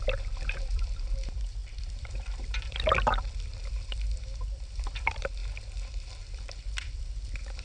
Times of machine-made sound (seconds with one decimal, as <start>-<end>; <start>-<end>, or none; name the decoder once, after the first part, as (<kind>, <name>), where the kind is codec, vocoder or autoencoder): 0.0-5.4 (vocoder, BigVGAN v2); 6.3-7.6